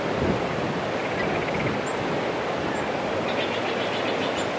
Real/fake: real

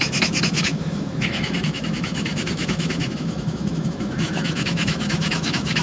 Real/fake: fake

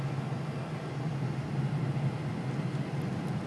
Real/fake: real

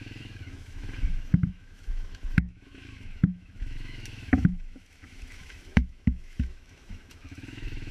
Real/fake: fake